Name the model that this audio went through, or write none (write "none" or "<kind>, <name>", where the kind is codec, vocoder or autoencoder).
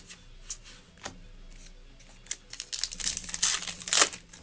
none